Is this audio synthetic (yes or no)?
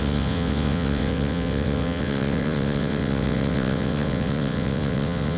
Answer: yes